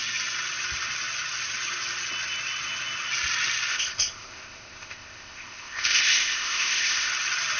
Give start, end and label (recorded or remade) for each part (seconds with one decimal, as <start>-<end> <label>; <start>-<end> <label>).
0.0-3.7 recorded; 3.7-7.1 remade; 7.1-7.6 recorded